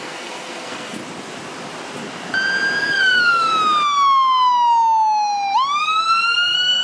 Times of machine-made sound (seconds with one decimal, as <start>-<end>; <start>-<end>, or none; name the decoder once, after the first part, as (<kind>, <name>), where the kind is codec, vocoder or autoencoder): 0.0-1.0 (codec, SNAC); 2.8-3.5; 5.8-6.8